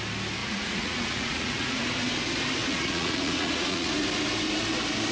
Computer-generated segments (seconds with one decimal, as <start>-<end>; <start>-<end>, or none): 0.4-1.8; 2.6-3.9